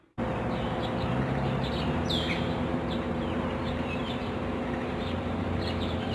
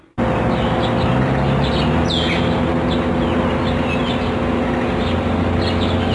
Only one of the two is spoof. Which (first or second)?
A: first